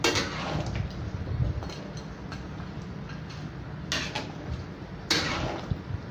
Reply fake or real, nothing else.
real